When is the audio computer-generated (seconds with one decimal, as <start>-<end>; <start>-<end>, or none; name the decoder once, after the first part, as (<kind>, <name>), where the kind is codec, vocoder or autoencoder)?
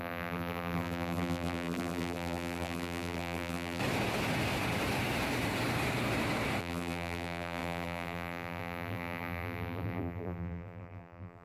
0.0-3.8 (vocoder, BigVGAN v2); 6.6-11.4